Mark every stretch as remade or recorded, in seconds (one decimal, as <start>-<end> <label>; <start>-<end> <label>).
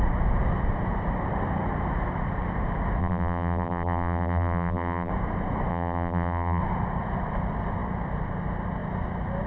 0.0-3.0 recorded; 3.0-5.1 remade; 5.1-5.7 recorded; 5.7-6.6 remade; 6.6-9.5 recorded